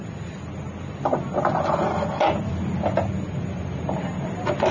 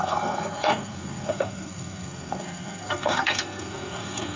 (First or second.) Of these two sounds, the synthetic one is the second